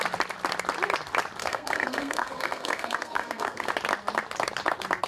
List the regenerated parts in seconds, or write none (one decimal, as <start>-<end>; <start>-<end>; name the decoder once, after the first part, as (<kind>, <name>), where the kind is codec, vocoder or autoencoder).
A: 1.4-3.7 (codec, SNAC)